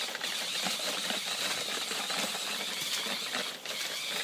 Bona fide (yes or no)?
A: no